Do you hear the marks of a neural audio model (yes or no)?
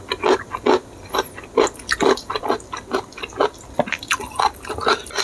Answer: no